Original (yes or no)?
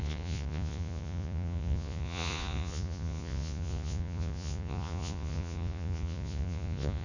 no